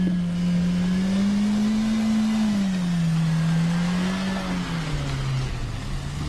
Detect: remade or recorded recorded